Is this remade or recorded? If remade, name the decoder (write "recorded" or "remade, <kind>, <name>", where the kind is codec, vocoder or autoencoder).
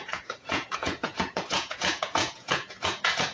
remade, vocoder, Vocos